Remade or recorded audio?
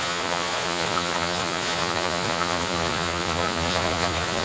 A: remade